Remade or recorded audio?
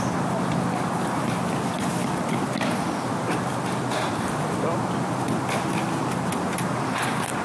recorded